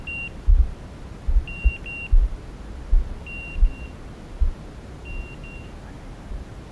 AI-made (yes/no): no